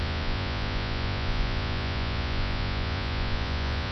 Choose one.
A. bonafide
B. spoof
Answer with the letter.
B